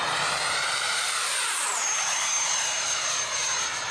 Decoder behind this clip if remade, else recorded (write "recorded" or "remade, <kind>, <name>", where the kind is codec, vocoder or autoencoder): remade, vocoder, BigVGAN v2